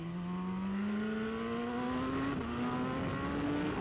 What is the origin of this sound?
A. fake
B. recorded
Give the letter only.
B